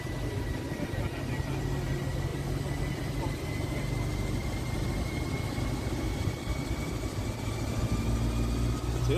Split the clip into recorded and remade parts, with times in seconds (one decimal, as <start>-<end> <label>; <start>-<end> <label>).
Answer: 0.0-4.4 recorded; 4.4-7.8 remade; 7.8-9.2 recorded